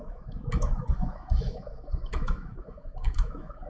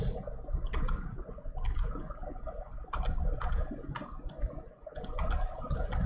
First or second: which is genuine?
second